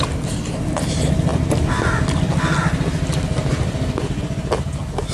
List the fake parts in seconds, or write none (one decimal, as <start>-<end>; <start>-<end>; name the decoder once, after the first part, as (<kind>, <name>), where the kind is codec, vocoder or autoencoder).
none

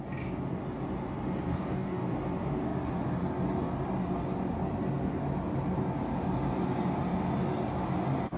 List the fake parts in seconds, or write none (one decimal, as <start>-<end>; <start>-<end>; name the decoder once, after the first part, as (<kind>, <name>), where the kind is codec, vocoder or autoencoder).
1.5-2.1 (codec, DAC)

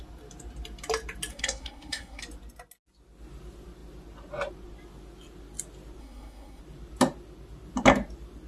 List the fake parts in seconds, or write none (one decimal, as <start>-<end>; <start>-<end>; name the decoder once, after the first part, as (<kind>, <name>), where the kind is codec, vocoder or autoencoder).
1.3-2.2 (codec, SNAC); 6.0-6.6